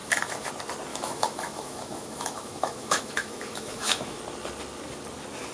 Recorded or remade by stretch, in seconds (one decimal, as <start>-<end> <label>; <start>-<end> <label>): 0.0-0.5 remade; 0.5-0.9 recorded; 0.9-4.2 remade; 4.2-5.5 recorded